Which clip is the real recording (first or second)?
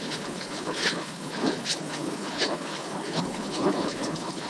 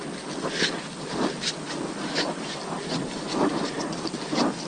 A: second